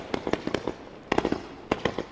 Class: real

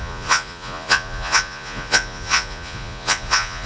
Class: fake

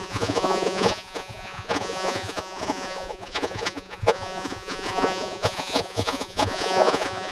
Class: fake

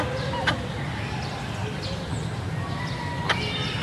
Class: real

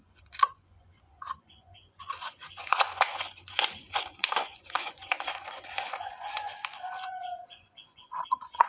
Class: fake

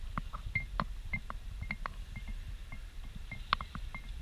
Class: real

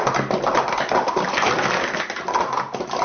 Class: real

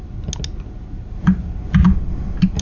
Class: real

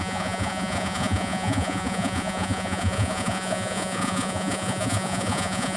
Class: fake